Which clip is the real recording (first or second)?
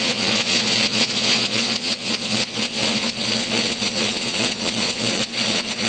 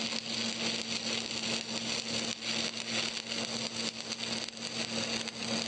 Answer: second